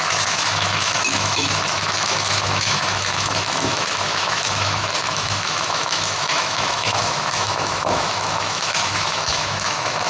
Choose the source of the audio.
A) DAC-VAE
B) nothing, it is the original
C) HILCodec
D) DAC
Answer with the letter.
A